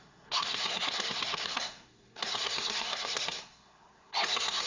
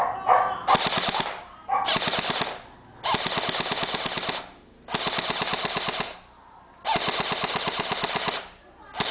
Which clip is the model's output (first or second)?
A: first